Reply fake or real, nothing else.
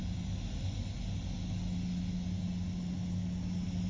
real